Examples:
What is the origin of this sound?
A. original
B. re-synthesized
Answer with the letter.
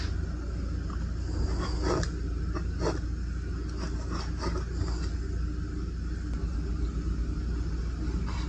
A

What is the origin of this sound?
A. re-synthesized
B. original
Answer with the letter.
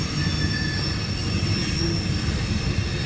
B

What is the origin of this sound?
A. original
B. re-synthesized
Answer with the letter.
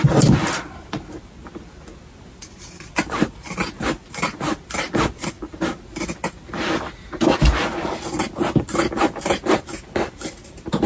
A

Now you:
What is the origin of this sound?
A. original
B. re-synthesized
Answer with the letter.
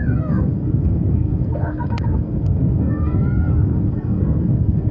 B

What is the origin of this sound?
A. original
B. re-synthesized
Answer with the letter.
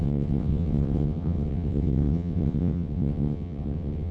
B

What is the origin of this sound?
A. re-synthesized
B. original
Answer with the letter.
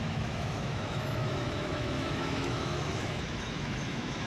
A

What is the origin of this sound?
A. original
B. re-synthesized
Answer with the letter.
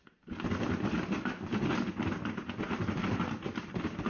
A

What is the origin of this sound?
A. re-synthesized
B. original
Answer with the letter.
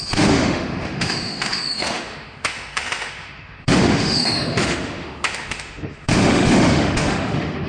A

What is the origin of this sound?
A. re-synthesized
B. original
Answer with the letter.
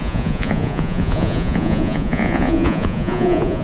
A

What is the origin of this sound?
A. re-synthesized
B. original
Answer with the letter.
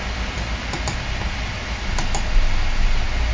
B